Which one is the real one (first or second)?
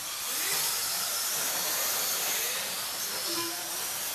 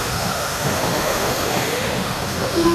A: first